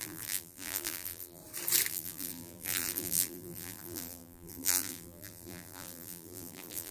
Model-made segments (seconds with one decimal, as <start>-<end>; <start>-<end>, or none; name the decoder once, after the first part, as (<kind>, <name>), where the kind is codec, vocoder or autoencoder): 0.0-1.4 (vocoder, BigVGAN v2); 1.9-6.9